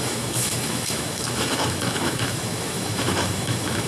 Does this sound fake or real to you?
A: fake